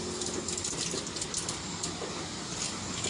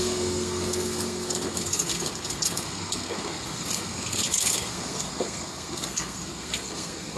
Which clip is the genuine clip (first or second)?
first